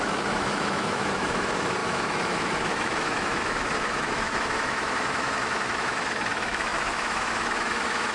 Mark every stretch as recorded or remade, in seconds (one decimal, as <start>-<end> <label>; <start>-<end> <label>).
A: 0.0-8.1 remade